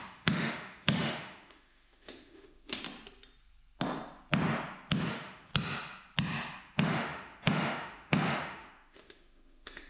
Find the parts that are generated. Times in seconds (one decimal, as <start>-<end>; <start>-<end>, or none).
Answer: 0.0-2.8; 5.1-5.5; 6.6-9.9